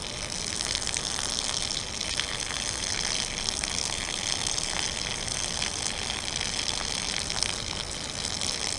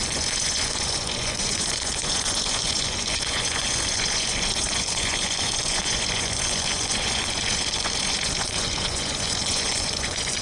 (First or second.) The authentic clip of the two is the first